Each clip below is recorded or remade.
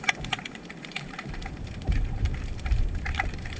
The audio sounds remade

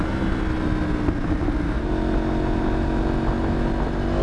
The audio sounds recorded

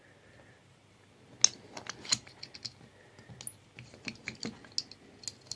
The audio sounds recorded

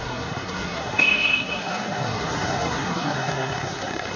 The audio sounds remade